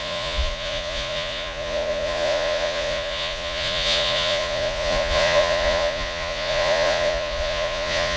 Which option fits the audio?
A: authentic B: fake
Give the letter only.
B